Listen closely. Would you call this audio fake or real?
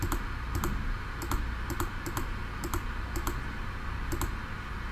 real